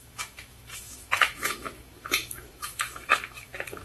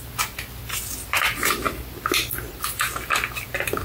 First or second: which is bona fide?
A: second